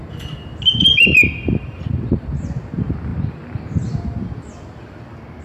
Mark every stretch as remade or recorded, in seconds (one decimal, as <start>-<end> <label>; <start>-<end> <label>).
0.0-5.4 recorded